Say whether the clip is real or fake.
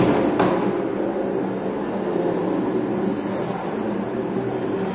real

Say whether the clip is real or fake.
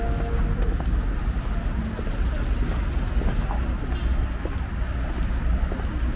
real